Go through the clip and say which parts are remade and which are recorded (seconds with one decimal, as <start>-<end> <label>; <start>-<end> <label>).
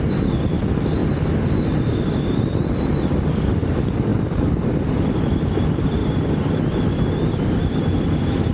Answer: 0.0-1.0 remade; 1.0-2.8 recorded; 2.8-6.0 remade; 6.0-7.6 recorded; 7.6-8.5 remade